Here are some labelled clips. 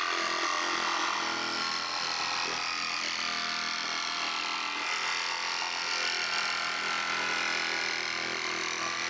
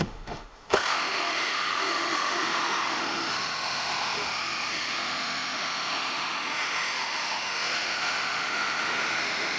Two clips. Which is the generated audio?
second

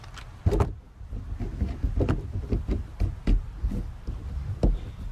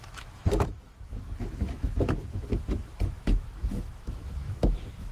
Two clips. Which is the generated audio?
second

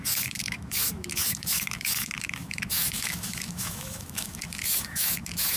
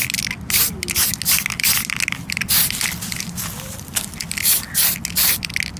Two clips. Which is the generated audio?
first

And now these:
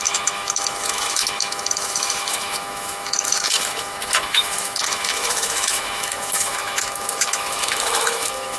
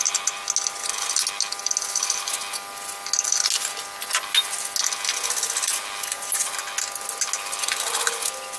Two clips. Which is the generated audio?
first